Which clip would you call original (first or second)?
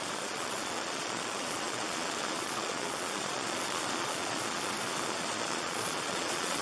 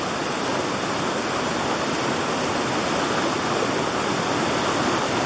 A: second